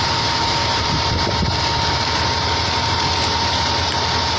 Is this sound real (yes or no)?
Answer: yes